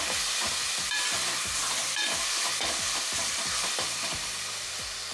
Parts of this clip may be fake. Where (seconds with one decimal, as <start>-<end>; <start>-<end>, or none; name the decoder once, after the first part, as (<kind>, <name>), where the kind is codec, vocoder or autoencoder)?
0.0-5.1 (vocoder, BigVGAN v2)